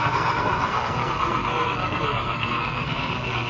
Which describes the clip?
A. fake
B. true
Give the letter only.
A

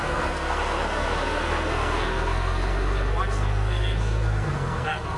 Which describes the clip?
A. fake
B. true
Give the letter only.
A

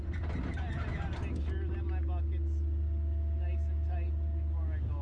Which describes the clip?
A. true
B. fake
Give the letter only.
A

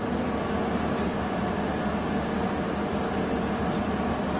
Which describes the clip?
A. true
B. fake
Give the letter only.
A